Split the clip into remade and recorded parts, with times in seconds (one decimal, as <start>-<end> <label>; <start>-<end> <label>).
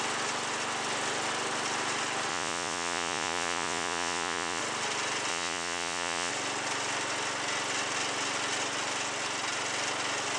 0.0-2.3 recorded; 2.3-4.6 remade; 4.6-5.3 recorded; 5.3-6.3 remade; 6.3-10.4 recorded